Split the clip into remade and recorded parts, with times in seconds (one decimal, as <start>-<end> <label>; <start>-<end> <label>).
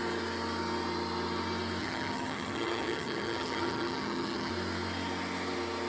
0.0-1.8 recorded; 1.8-4.5 remade; 4.5-5.9 recorded